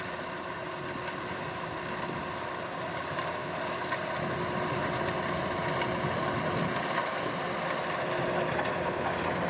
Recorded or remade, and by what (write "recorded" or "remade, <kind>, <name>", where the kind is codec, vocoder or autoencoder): recorded